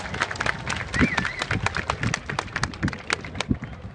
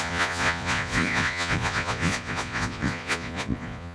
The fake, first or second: second